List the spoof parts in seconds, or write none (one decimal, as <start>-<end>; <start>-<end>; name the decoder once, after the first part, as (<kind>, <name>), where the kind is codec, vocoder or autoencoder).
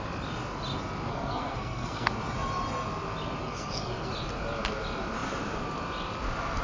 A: 1.1-2.1 (codec, SNAC); 3.4-4.1